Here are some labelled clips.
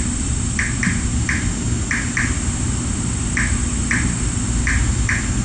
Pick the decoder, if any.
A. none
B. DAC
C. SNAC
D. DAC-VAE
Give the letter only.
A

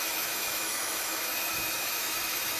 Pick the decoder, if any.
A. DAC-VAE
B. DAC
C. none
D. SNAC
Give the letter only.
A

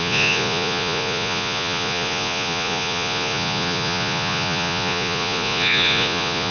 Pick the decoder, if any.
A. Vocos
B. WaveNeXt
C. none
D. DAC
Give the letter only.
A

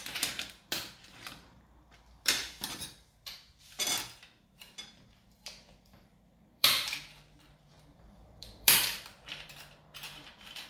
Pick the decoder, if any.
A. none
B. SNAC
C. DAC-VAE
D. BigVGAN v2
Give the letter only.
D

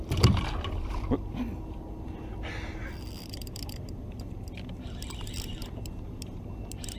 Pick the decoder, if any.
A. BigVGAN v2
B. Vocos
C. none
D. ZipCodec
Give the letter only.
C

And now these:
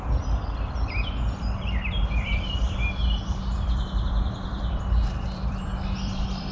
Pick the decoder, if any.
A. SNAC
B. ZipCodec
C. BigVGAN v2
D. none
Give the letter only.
C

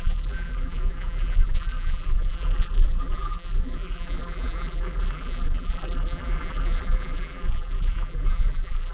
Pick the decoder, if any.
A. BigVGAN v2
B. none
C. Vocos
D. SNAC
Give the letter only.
A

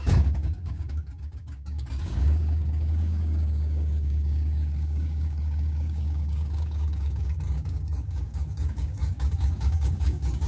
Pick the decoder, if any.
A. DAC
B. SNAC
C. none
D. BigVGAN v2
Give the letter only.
A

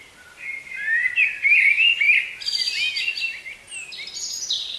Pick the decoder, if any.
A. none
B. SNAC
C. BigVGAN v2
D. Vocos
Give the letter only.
A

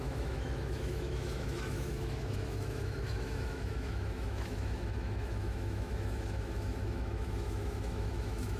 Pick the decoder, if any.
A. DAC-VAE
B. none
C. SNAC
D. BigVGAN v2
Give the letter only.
A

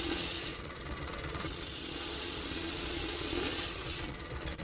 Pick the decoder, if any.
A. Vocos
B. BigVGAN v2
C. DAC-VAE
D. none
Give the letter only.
A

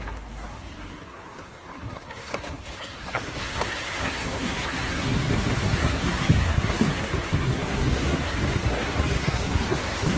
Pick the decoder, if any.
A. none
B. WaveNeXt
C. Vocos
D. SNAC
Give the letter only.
D